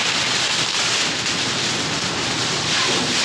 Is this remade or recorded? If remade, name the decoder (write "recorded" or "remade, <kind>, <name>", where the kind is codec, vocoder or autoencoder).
recorded